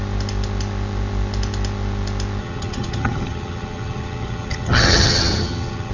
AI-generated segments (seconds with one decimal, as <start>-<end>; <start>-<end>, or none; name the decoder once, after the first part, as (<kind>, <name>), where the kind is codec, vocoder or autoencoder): 2.4-5.9 (vocoder, HiFi-GAN)

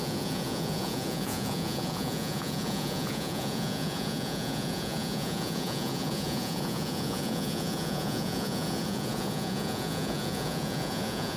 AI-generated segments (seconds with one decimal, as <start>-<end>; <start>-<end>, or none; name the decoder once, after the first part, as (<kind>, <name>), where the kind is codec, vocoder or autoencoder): 0.0-11.4 (vocoder, Vocos)

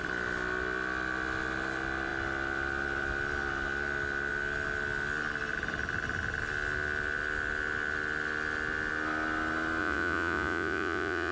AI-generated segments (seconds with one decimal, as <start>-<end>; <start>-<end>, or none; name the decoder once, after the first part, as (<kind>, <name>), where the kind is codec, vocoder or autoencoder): 9.8-11.3 (vocoder, Vocos)

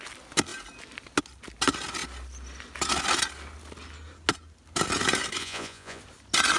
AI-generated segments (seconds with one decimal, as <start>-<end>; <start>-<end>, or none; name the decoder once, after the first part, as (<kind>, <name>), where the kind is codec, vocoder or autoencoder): 5.4-6.0 (vocoder, Vocos)